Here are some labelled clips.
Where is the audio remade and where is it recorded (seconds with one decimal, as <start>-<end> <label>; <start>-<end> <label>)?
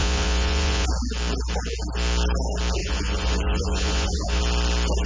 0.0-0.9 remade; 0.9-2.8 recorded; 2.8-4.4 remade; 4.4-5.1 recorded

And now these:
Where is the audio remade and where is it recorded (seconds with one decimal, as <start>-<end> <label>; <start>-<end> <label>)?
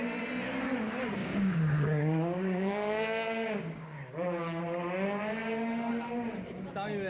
0.0-1.2 recorded; 1.2-4.6 remade; 4.6-7.1 recorded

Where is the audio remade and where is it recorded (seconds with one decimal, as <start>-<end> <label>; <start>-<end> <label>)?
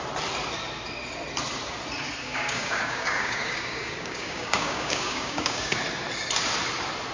0.0-2.2 recorded; 2.2-5.8 remade; 5.8-7.1 recorded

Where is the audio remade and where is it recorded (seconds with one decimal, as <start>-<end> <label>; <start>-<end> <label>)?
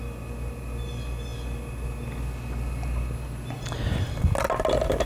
0.0-5.1 recorded